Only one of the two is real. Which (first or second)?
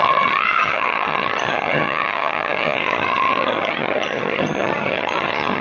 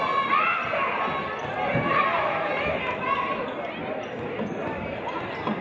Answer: second